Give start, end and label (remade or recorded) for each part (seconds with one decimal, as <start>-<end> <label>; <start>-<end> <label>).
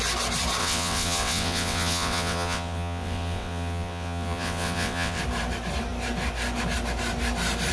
0.0-0.6 recorded; 0.6-5.2 remade; 5.2-7.7 recorded